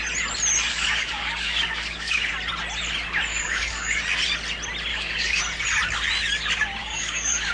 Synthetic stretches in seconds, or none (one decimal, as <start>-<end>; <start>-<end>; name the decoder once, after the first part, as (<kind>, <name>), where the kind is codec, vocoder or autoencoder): 0.7-2.3 (codec, DAC); 3.3-4.0; 4.9-5.4; 6.8-7.5